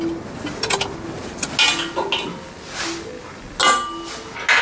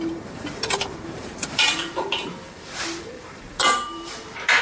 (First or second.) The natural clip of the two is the first